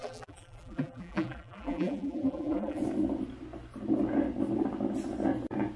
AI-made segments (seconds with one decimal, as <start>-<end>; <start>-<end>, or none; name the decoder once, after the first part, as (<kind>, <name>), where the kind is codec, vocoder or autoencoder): 0.0-2.8 (vocoder, BigVGAN v2)